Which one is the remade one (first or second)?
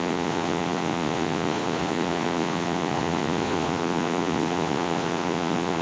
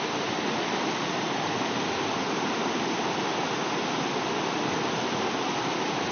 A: first